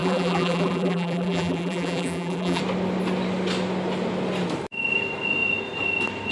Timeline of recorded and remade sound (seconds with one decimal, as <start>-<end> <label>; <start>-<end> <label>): 0.0-2.6 remade; 2.6-6.3 recorded